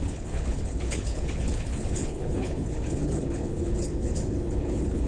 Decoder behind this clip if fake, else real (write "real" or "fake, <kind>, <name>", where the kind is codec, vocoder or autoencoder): fake, codec, HILCodec